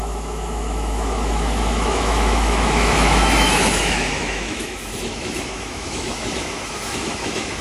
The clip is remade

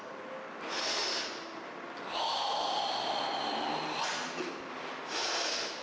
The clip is recorded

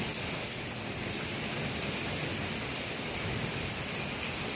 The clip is recorded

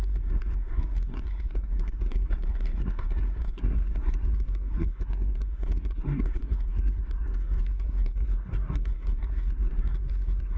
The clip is remade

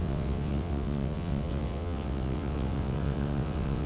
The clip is remade